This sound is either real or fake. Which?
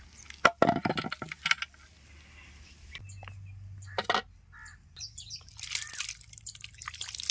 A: real